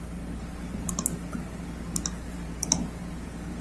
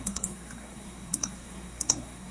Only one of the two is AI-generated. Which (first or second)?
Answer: second